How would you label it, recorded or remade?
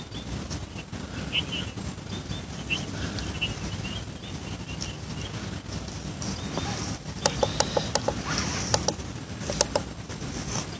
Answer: recorded